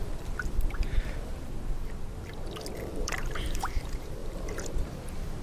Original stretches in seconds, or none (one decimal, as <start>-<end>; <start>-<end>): 1.3-2.8